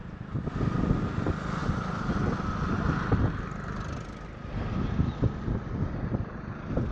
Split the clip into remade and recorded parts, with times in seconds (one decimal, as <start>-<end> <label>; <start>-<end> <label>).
0.0-6.9 recorded

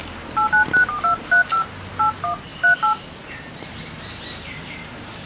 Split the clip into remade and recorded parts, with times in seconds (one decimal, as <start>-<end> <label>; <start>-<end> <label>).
0.0-5.3 recorded

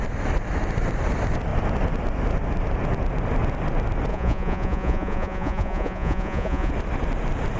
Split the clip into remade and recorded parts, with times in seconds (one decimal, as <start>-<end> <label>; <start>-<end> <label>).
0.0-4.1 recorded; 4.1-6.7 remade; 6.7-7.6 recorded